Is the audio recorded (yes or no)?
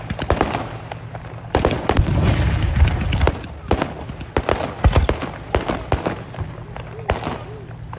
yes